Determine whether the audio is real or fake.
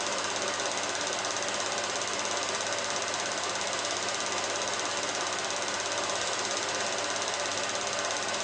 real